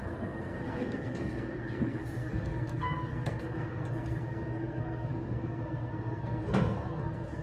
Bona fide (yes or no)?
no